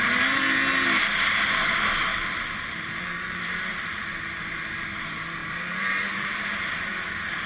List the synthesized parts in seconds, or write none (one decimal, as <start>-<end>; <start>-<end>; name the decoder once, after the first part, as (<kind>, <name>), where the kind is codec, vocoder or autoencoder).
2.1-4.6 (vocoder, BigVGAN v2); 5.4-6.8